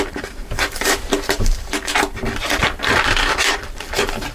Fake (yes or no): yes